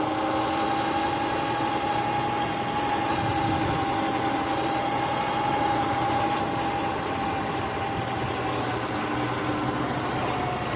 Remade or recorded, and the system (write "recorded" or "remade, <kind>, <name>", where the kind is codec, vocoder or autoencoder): recorded